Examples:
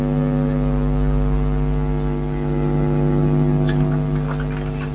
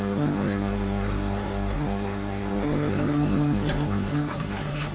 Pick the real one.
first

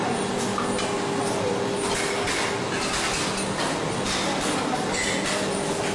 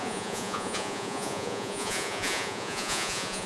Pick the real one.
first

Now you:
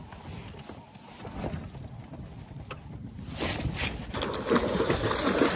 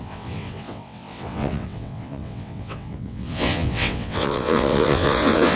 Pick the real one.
first